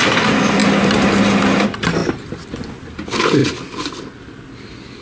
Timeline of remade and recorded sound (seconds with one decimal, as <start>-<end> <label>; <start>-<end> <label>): 0.0-5.0 recorded